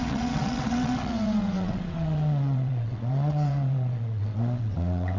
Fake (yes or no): yes